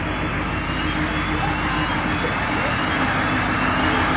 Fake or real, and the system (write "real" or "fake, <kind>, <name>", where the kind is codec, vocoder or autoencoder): real